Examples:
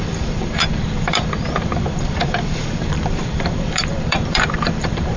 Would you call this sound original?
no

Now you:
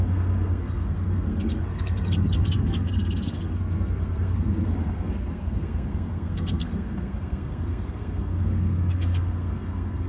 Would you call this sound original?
no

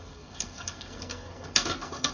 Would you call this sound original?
no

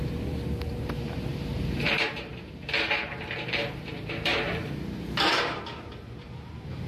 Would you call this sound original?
no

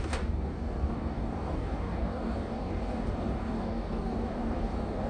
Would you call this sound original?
no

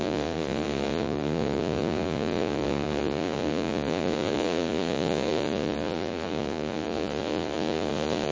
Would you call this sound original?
no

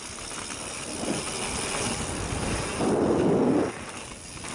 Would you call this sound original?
yes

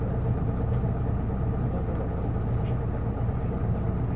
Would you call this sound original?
yes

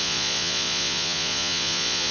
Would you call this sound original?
no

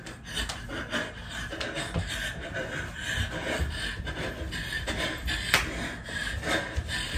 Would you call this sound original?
yes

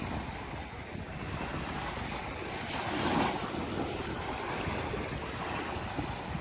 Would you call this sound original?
yes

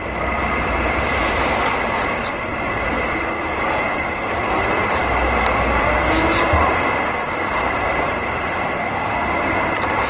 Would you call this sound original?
no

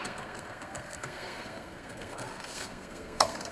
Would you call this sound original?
no